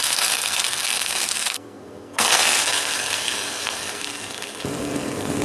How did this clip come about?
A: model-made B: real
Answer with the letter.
A